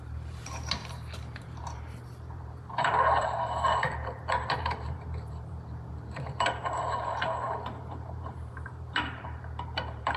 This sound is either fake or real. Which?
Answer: fake